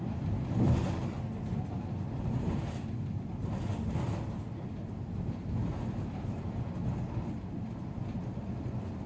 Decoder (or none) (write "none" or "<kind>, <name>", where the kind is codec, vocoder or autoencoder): none